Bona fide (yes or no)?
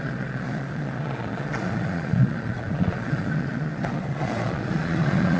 no